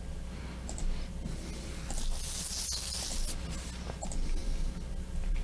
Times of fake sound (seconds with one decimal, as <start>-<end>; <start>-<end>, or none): none